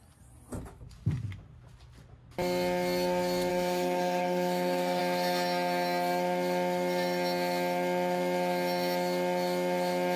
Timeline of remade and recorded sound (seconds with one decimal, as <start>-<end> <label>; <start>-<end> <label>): 0.0-3.5 recorded; 3.5-5.0 remade; 5.0-10.2 recorded